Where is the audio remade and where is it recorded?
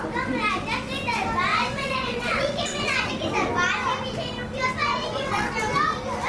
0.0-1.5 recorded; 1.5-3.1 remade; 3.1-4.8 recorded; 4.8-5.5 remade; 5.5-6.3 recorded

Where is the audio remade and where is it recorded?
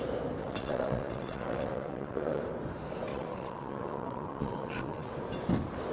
0.0-0.4 recorded; 0.4-2.4 remade; 2.4-3.1 recorded; 3.1-5.1 remade; 5.1-5.9 recorded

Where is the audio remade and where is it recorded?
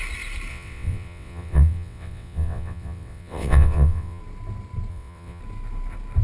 0.0-0.5 recorded; 0.5-4.2 remade; 4.2-4.9 recorded; 4.9-5.4 remade; 5.4-6.2 recorded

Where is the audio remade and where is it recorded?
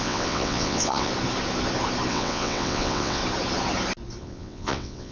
0.0-1.1 remade; 1.1-2.1 recorded; 2.1-3.2 remade; 3.2-4.2 recorded; 4.2-5.1 remade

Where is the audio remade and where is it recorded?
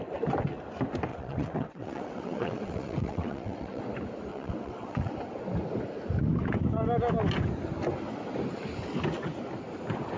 0.0-1.1 recorded; 1.1-3.8 remade; 3.8-4.3 recorded; 4.3-5.1 remade; 5.1-10.2 recorded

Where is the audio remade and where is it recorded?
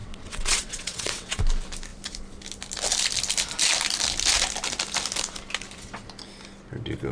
0.0-1.4 remade; 1.4-7.1 recorded